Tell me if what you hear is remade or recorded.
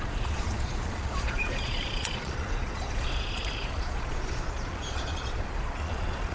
remade